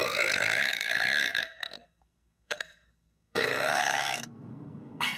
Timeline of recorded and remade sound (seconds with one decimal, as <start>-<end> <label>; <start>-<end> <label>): 0.0-5.2 remade